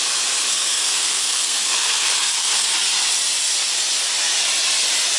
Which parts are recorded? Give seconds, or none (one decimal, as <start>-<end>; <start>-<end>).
0.0-0.5; 2.7-5.2